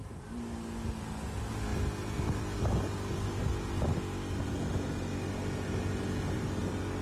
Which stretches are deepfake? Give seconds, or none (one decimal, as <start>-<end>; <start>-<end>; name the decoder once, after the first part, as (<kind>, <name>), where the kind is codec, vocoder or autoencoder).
none